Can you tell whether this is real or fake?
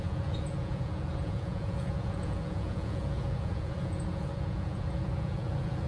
fake